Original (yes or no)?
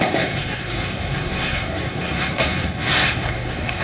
no